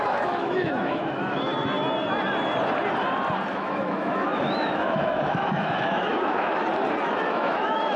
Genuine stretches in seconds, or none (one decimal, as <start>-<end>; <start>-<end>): 1.5-3.5; 6.6-7.1